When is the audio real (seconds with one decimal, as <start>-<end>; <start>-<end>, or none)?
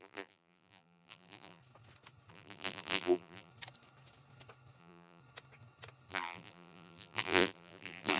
1.6-2.3; 3.5-4.8; 5.2-6.1